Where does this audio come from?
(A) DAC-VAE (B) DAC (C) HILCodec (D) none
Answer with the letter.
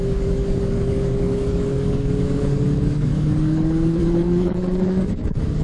B